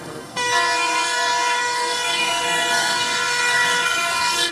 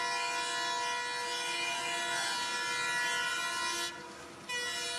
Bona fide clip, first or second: second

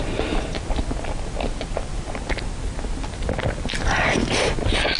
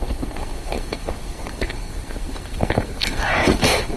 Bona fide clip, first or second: first